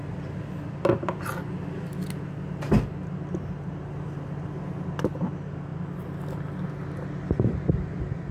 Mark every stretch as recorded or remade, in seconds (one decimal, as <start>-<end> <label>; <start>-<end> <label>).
0.0-8.3 recorded